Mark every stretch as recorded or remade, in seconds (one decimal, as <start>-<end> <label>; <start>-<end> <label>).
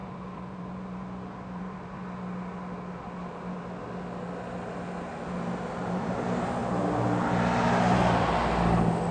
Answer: 0.0-2.0 remade; 2.0-5.8 recorded; 5.8-6.6 remade; 6.6-9.1 recorded